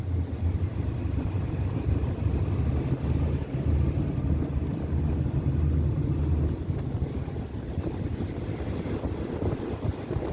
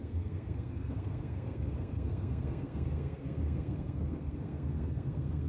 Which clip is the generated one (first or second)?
second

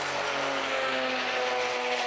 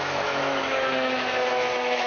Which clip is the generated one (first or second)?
second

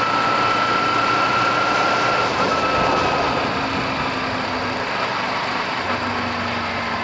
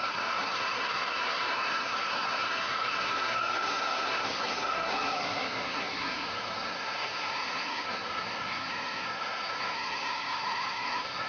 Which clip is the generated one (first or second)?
second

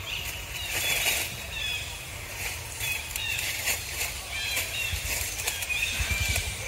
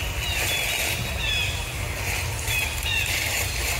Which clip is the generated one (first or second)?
first